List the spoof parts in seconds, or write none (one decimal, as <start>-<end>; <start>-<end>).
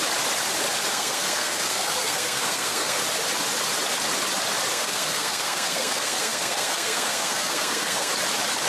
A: 0.9-3.0; 4.7-8.1